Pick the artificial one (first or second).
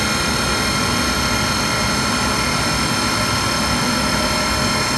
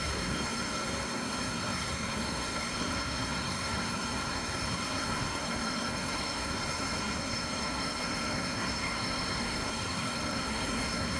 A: second